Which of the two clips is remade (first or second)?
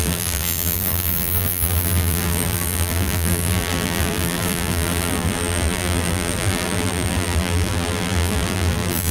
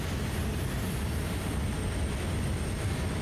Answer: first